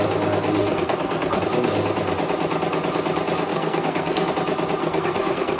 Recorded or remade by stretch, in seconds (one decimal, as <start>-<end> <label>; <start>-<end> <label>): 0.0-0.6 recorded; 0.6-1.4 remade; 1.4-3.5 recorded; 3.5-4.3 remade; 4.3-4.8 recorded; 4.8-5.6 remade